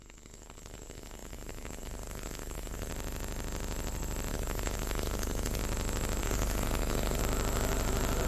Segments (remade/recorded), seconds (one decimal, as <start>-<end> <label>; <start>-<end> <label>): 0.0-2.9 remade; 2.9-4.3 recorded; 4.3-5.6 remade; 5.6-6.2 recorded; 6.2-7.2 remade; 7.2-8.3 recorded